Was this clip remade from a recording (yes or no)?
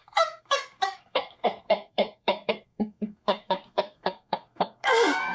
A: yes